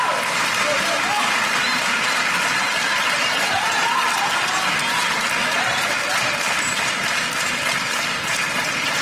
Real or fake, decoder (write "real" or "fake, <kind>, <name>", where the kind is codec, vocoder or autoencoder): real